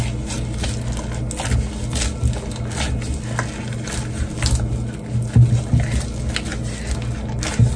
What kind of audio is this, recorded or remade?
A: recorded